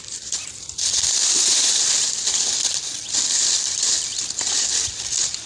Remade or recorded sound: recorded